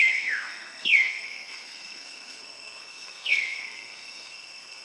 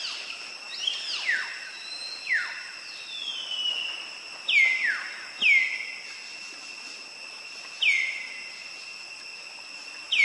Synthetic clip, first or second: first